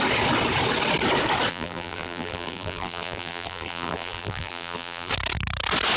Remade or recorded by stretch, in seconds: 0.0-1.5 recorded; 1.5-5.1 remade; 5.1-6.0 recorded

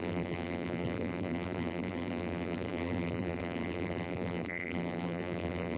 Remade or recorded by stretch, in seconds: 0.0-5.8 remade

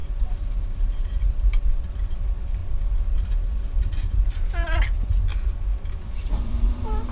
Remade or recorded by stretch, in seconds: 0.0-2.2 remade; 2.2-2.6 recorded; 2.6-4.5 remade; 4.5-5.7 recorded; 5.7-7.1 remade

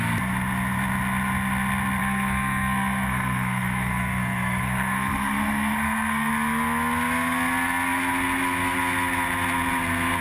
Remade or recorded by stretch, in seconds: 0.0-2.0 recorded; 2.0-6.3 remade; 6.3-10.2 recorded

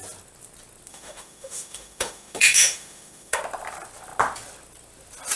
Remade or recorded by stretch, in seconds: 0.0-0.9 recorded; 0.9-3.4 remade; 3.4-5.4 recorded

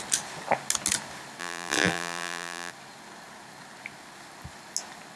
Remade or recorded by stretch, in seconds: 0.0-1.4 recorded; 1.4-2.7 remade; 2.7-5.2 recorded